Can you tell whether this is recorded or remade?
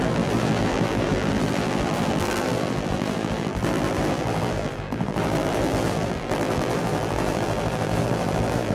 remade